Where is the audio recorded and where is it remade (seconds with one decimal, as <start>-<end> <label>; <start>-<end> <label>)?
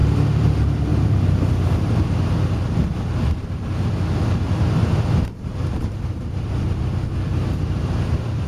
0.0-0.5 remade; 0.5-0.9 recorded; 0.9-2.0 remade; 2.0-4.8 recorded; 4.8-6.5 remade; 6.5-7.3 recorded; 7.3-8.1 remade; 8.1-8.5 recorded